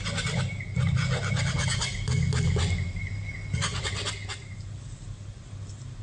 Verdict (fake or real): real